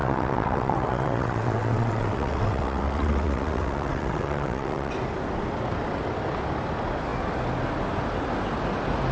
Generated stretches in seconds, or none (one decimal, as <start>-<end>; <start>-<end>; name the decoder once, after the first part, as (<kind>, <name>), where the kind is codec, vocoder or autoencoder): 0.0-4.9 (vocoder, WaveNeXt)